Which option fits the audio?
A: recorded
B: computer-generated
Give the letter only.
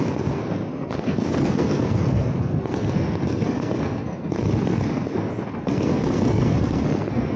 B